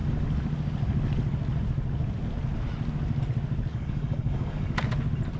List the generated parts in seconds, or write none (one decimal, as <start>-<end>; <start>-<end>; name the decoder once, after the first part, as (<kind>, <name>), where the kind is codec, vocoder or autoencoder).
3.7-4.8 (codec, DAC)